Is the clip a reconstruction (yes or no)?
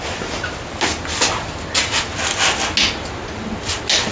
no